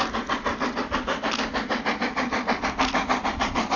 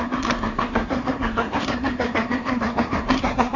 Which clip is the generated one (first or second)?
second